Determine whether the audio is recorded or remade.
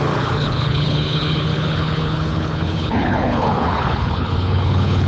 remade